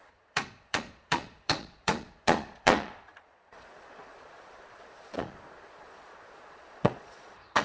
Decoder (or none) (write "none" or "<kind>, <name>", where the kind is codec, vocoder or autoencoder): vocoder, Vocos